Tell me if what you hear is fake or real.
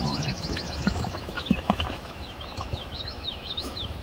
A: fake